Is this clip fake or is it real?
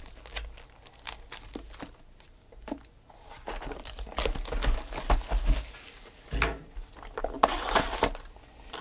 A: real